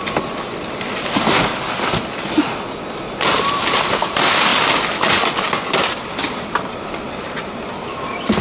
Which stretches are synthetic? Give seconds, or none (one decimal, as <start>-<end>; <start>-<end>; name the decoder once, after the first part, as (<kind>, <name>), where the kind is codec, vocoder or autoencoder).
none